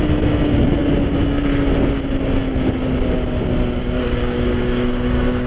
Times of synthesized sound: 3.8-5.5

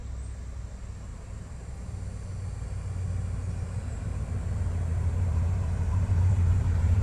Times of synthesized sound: 1.1-1.8; 4.9-7.0

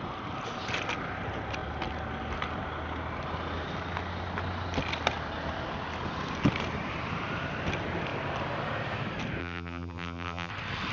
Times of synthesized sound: 9.4-10.5

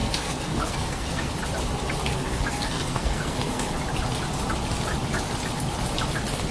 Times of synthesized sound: 0.0-1.3; 2.1-3.7

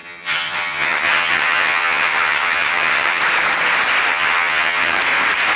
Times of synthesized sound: 0.0-3.2; 4.1-5.0

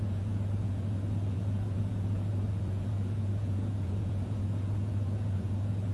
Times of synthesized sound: 0.0-5.9